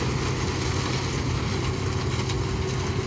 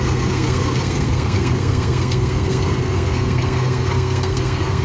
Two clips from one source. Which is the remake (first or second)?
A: second